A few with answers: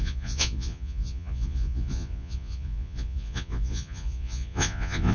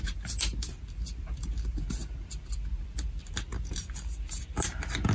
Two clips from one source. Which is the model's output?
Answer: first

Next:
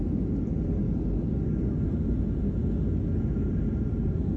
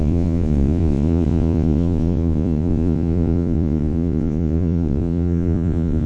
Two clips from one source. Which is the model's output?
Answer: second